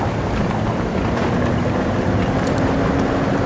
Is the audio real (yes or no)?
yes